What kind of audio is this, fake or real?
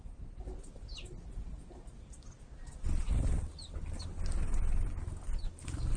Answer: real